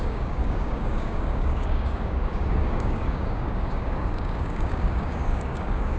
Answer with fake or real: fake